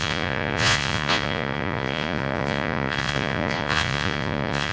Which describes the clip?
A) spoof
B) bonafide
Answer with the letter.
A